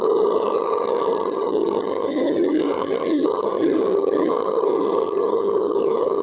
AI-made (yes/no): yes